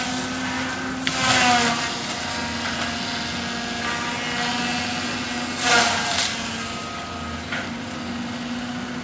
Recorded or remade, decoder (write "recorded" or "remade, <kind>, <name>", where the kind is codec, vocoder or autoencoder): recorded